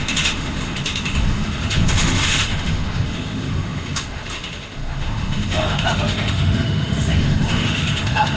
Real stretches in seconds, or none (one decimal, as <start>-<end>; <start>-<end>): none